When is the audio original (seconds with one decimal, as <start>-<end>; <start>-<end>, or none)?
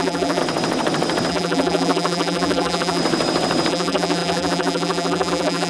0.4-1.3; 3.0-3.7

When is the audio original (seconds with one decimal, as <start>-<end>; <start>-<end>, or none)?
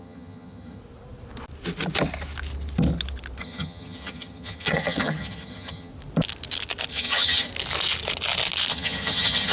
0.8-3.4; 5.9-6.9; 7.5-8.7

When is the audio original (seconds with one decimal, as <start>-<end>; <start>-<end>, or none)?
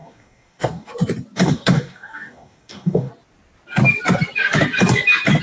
0.9-1.4; 3.1-5.4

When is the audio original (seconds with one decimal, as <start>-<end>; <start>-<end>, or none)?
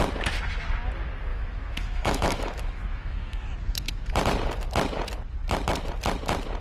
0.0-1.3; 4.1-6.6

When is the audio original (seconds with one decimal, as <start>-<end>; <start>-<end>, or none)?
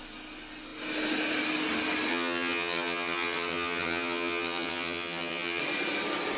0.0-2.1; 5.6-6.4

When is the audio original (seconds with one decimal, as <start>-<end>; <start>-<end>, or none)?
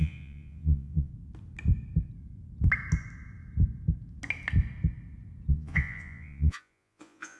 1.1-5.5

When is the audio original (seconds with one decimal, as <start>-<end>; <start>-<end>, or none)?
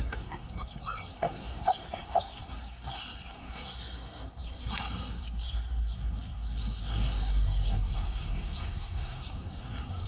none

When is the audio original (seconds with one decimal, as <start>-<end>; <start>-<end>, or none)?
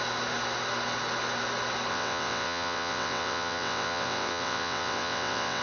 0.0-1.9